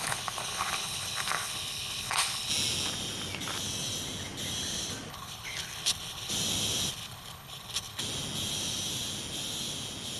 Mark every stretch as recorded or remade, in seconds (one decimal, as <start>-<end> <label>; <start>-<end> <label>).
0.0-2.5 remade; 2.5-5.1 recorded; 5.1-6.3 remade; 6.3-6.9 recorded; 6.9-8.0 remade; 8.0-10.2 recorded